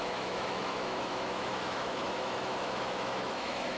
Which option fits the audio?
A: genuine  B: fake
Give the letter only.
B